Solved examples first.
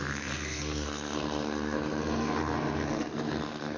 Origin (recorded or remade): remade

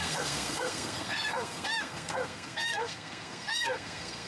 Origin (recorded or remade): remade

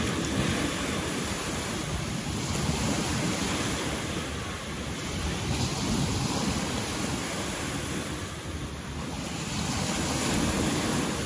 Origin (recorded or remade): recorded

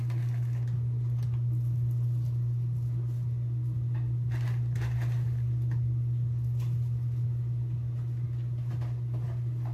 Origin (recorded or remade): recorded